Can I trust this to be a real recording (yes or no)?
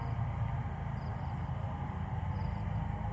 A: yes